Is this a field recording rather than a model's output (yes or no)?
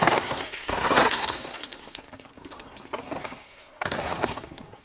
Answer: no